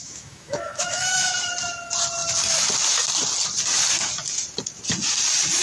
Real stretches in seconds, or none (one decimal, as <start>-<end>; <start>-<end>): 1.3-5.6

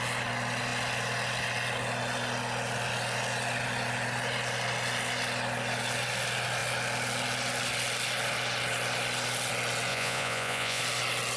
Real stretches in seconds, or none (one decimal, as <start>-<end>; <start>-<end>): 0.0-9.9; 10.8-11.4